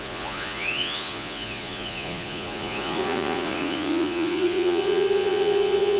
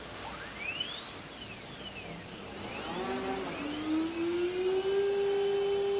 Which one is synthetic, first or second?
first